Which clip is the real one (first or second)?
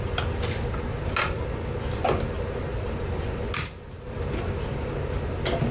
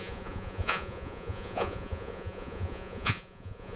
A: first